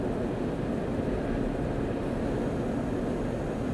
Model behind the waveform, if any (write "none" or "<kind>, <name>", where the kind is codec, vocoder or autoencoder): none